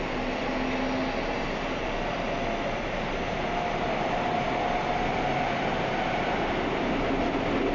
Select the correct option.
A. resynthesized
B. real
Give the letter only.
B